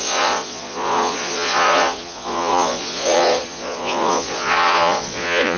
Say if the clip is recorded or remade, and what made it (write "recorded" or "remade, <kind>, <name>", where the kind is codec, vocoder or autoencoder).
remade, vocoder, Vocos